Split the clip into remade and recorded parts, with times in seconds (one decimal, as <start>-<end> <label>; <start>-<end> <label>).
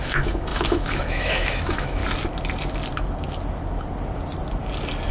0.0-2.0 remade; 2.0-5.1 recorded